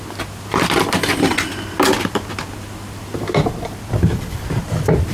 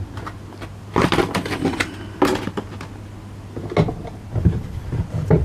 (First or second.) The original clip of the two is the second